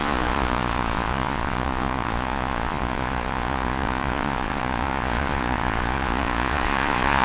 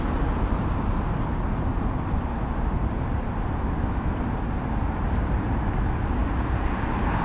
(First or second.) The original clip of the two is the second